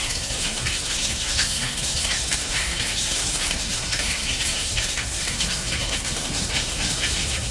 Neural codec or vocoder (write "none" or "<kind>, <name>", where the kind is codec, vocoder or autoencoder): codec, SNAC